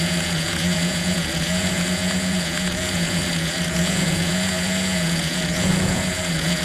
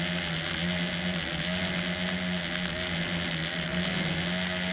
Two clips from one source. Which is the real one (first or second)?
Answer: second